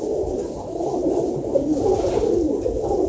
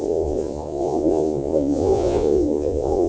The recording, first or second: first